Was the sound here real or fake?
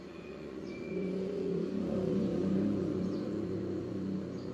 fake